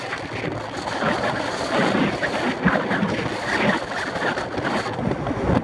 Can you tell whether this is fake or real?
real